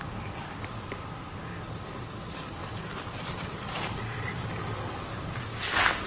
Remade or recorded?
remade